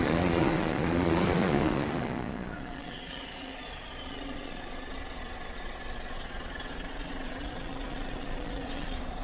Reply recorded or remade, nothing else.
remade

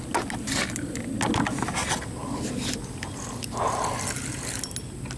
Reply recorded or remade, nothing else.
recorded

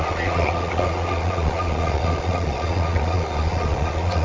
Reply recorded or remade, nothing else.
remade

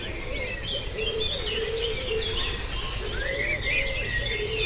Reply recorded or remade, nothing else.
recorded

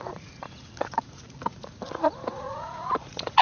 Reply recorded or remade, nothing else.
remade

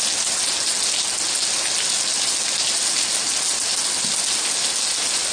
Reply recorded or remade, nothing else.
recorded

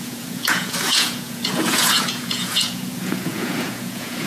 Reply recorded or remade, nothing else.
remade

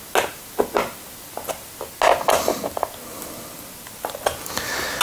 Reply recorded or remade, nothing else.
recorded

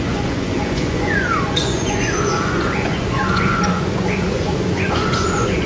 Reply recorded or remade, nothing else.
remade